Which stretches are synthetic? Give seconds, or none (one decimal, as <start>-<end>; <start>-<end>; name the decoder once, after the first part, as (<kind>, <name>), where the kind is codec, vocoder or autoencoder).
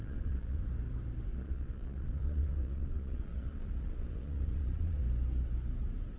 0.0-0.6 (vocoder, Vocos); 1.3-5.0